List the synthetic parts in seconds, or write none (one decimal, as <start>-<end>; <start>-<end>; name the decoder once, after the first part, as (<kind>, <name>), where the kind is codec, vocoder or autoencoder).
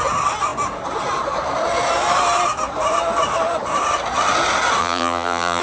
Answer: 4.8-5.6 (vocoder, BigVGAN v2)